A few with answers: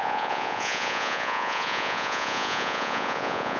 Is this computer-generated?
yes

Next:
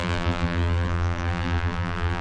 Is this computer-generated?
yes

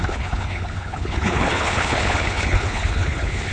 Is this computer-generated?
yes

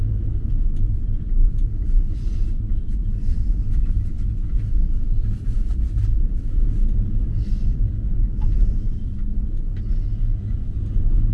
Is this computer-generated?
yes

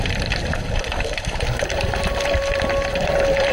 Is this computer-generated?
yes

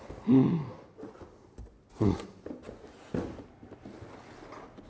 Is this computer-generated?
no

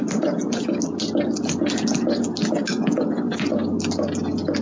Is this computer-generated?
no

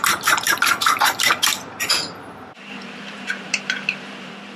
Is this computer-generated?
yes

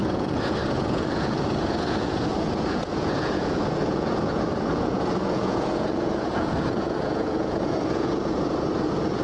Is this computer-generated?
yes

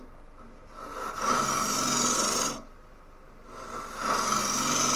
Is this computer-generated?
no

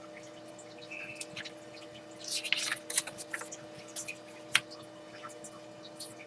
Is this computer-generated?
no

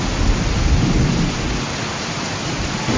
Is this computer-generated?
no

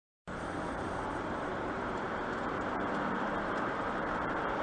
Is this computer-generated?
yes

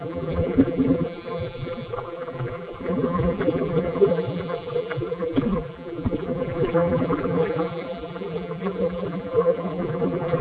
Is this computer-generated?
yes